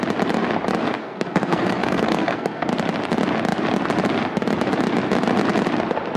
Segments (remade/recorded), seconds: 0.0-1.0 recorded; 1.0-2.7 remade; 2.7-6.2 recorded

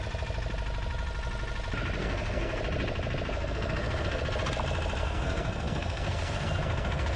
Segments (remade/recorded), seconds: 0.0-2.0 recorded; 2.0-2.6 remade; 2.6-3.3 recorded; 3.3-4.2 remade; 4.2-5.0 recorded; 5.0-7.2 remade

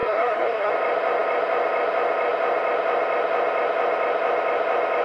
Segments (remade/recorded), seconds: 0.0-0.7 remade; 0.7-5.0 recorded

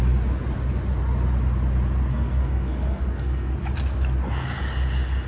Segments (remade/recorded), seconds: 0.0-2.1 recorded; 2.1-3.5 remade; 3.5-5.3 recorded